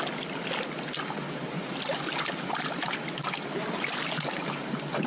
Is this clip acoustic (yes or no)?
yes